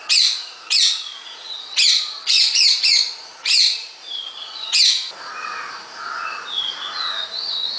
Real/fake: fake